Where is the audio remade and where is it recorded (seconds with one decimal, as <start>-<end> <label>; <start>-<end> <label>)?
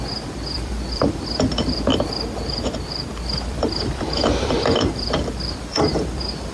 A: 0.0-1.9 remade; 1.9-3.2 recorded; 3.2-6.5 remade